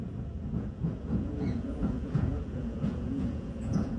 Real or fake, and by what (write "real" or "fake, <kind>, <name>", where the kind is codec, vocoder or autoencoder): fake, vocoder, Vocos